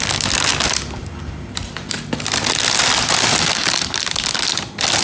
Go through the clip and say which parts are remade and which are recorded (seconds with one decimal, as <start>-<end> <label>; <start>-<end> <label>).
0.0-5.0 recorded